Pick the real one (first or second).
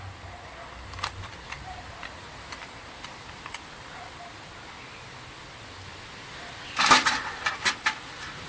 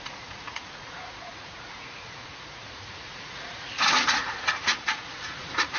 first